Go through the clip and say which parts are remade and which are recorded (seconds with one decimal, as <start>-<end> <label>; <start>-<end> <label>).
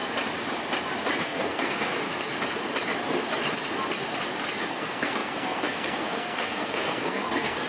0.0-1.2 recorded; 1.2-1.9 remade; 1.9-4.7 recorded; 4.7-7.7 remade